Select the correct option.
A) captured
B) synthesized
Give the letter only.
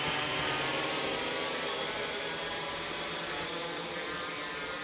B